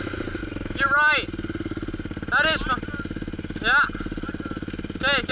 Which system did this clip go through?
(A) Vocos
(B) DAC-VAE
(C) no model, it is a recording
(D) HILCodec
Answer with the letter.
C